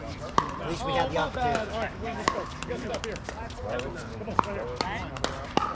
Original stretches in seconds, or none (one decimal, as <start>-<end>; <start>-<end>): 0.0-1.2; 3.0-5.7